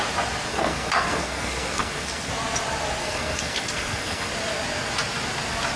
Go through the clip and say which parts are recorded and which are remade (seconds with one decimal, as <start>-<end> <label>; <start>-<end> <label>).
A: 0.0-0.5 recorded; 0.5-2.3 remade; 2.3-3.0 recorded; 3.0-4.3 remade; 4.3-5.8 recorded